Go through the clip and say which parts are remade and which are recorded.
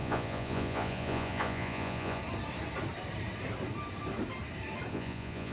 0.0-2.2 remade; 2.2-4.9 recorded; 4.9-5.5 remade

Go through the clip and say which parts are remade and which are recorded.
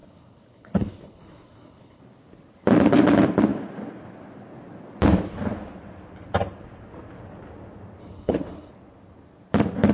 0.0-2.0 remade; 2.0-8.0 recorded; 8.0-8.7 remade; 8.7-9.9 recorded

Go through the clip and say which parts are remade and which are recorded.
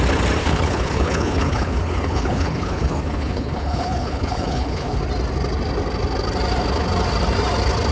0.0-0.4 recorded; 0.4-5.0 remade; 5.0-7.9 recorded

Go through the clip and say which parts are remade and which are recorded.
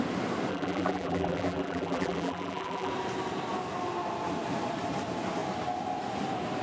0.0-0.5 recorded; 0.5-2.9 remade; 2.9-6.6 recorded